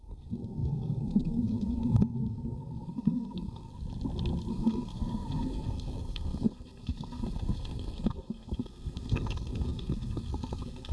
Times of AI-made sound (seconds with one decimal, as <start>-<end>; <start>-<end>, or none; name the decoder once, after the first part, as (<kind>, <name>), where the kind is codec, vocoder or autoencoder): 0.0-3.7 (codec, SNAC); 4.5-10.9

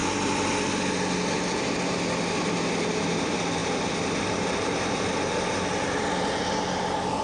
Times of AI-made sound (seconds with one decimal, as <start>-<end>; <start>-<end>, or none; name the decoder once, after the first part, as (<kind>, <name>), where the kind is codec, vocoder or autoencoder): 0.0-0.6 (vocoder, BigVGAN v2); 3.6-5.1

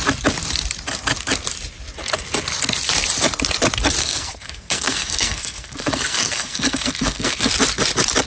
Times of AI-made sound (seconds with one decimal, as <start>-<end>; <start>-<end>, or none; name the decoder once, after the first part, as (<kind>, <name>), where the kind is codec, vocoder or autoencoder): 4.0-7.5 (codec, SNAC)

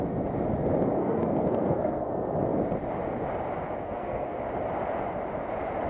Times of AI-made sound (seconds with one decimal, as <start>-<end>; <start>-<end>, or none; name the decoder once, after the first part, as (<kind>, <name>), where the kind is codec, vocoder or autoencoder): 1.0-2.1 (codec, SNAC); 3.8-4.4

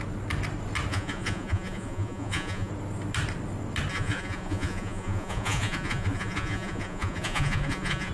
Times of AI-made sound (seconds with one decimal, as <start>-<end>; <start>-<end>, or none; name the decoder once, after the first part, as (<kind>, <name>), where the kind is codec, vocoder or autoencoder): 0.9-2.7 (vocoder, Vocos); 3.9-8.1